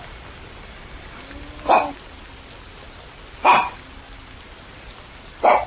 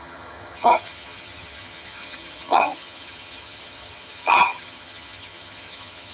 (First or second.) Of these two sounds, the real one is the first